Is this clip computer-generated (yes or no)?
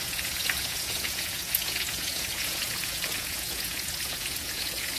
yes